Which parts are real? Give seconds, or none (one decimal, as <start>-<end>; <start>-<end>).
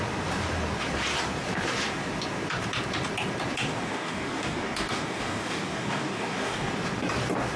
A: 0.0-3.7; 6.7-7.6